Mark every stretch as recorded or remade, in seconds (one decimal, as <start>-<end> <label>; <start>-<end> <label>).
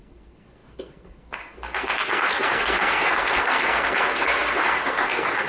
0.0-5.5 remade